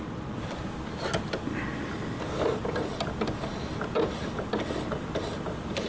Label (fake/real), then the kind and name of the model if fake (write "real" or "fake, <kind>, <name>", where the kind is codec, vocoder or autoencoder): real